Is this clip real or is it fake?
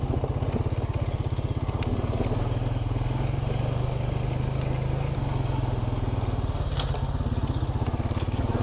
real